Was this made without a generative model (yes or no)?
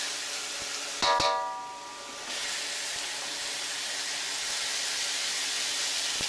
yes